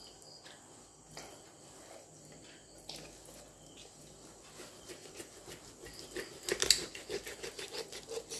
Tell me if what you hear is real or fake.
real